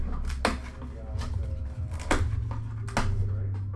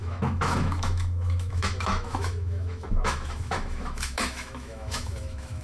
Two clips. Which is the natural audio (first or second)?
first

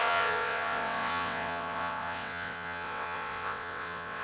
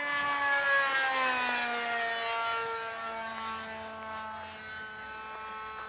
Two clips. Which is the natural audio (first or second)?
second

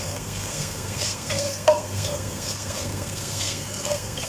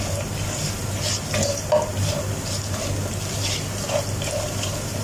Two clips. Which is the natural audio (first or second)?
second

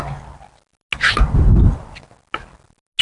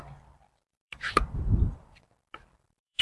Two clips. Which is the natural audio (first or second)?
first